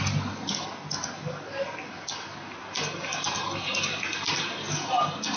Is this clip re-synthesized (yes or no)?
no